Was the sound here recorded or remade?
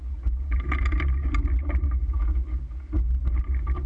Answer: recorded